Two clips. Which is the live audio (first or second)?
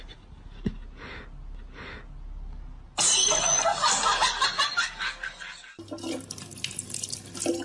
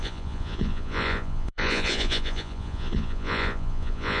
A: first